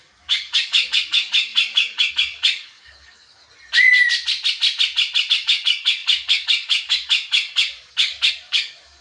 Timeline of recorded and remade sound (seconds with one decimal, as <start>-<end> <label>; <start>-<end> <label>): 0.0-3.4 remade; 3.4-5.3 recorded; 5.3-9.0 remade